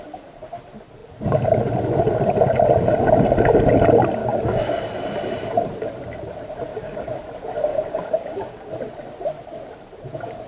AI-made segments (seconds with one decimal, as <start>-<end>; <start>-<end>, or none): 4.2-4.7; 6.7-7.2; 7.7-8.7